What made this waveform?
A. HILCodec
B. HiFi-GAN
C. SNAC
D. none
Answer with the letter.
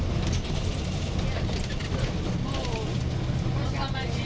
D